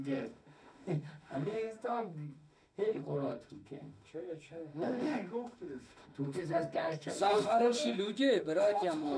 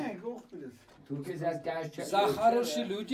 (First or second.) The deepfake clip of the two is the first